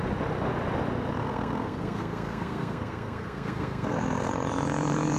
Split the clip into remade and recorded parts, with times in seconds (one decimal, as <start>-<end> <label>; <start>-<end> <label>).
0.0-1.2 recorded; 1.2-4.3 remade; 4.3-5.2 recorded